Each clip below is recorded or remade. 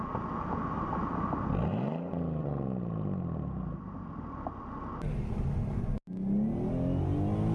recorded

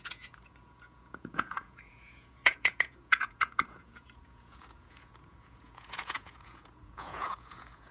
remade